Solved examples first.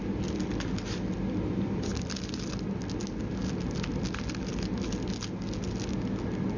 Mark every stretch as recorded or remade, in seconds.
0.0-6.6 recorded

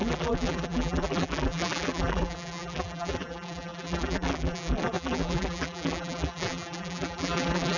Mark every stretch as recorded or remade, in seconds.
0.0-7.8 remade

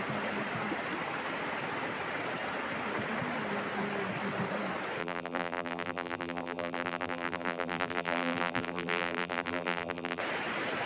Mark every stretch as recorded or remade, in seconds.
0.0-5.0 recorded; 5.0-10.2 remade; 10.2-10.9 recorded

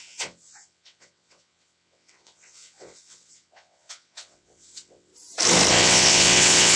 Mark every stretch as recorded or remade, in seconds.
0.0-5.1 remade; 5.1-5.7 recorded; 5.7-6.8 remade

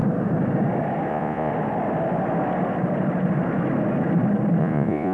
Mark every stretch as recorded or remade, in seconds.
0.0-1.1 recorded; 1.1-1.5 remade; 1.5-4.6 recorded; 4.6-5.1 remade

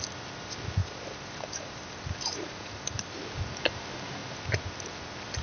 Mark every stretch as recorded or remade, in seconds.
0.0-0.8 recorded; 0.8-3.2 remade; 3.2-5.4 recorded